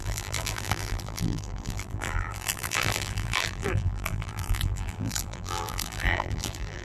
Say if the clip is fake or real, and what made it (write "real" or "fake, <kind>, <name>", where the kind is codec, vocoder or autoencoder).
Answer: fake, vocoder, BigVGAN v2